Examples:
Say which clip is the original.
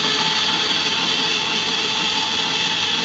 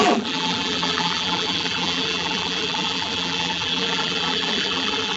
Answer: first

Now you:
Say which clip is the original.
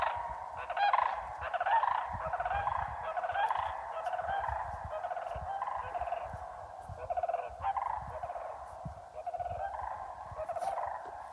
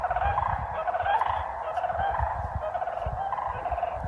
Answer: first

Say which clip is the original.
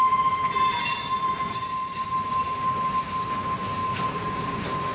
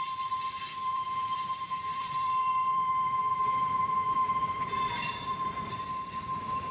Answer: first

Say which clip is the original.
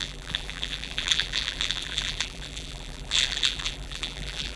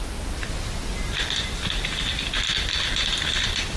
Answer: second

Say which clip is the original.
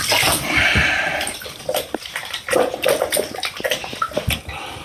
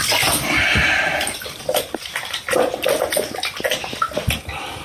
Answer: second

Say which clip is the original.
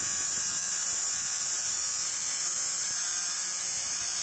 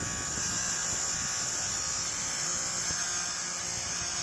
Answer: second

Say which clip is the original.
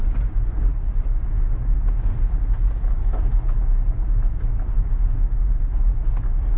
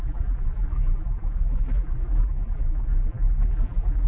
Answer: first